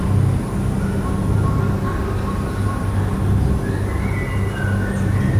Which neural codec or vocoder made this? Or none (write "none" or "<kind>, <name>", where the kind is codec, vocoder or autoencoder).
none